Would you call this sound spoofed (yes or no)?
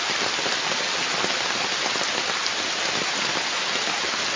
no